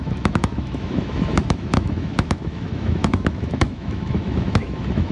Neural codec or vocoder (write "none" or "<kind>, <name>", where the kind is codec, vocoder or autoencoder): autoencoder, DAC-VAE